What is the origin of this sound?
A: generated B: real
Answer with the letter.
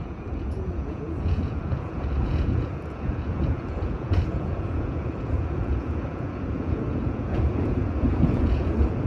A